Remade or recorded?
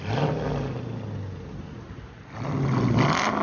recorded